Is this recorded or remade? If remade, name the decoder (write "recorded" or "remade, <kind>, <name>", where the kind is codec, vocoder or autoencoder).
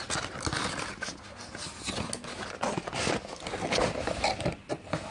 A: recorded